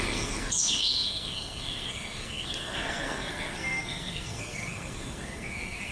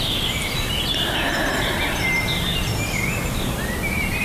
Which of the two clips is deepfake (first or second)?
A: first